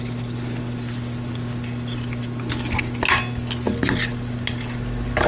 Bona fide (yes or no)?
yes